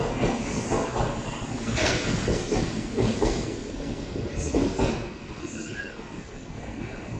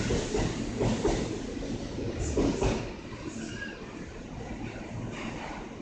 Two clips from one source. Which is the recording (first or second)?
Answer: second